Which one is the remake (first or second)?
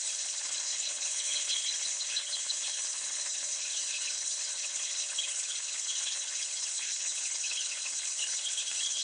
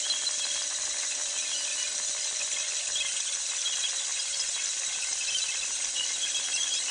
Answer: first